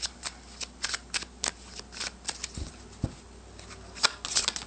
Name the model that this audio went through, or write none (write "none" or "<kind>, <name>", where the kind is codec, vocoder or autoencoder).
none